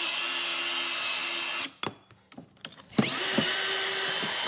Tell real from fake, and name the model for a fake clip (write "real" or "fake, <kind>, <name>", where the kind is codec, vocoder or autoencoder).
real